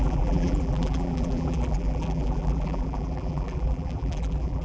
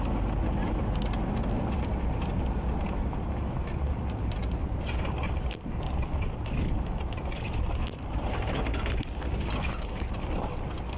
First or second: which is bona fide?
second